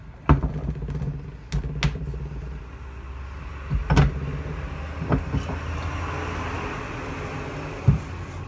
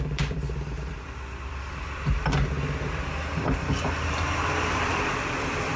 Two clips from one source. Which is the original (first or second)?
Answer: first